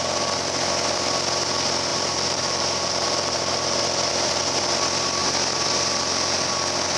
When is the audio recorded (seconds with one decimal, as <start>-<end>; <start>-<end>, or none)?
0.0-1.9; 4.1-7.0